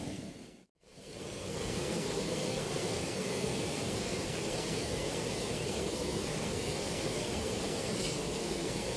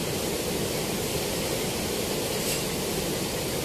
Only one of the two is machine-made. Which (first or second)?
first